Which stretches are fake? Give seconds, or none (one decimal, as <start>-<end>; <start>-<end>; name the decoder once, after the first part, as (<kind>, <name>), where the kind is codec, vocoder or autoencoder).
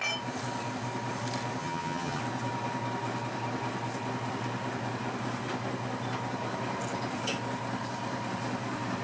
1.6-2.2 (vocoder, HiFi-GAN)